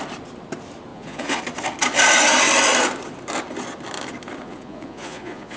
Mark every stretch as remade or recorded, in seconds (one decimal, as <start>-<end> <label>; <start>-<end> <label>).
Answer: 0.0-0.9 recorded; 0.9-1.4 remade; 1.4-4.4 recorded; 4.4-5.6 remade